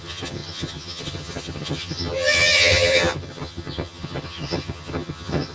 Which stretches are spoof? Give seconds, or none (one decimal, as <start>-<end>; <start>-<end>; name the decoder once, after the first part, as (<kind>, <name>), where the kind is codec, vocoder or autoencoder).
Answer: 0.0-5.5 (vocoder, HiFi-GAN)